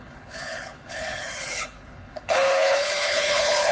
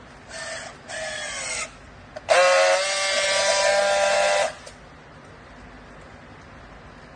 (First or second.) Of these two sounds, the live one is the second